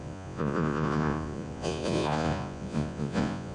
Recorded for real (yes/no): no